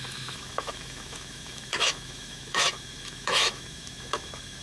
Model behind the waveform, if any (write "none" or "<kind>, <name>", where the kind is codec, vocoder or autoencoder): autoencoder, DAC-VAE